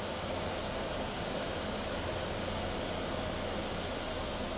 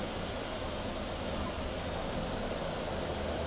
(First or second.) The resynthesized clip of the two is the second